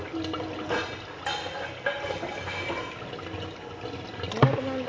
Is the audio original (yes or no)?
yes